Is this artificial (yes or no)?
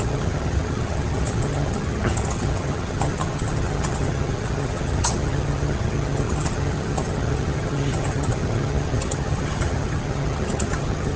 yes